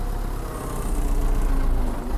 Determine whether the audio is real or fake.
real